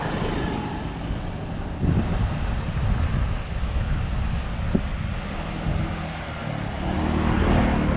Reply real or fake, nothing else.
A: real